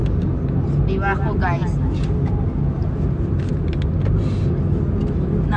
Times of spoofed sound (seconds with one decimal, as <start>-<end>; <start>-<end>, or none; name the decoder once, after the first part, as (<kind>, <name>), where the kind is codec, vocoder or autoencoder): none